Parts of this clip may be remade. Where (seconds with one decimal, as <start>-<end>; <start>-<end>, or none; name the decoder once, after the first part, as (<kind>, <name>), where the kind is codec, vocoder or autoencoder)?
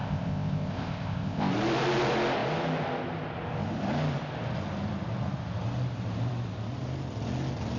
0.0-1.5 (codec, ZipCodec)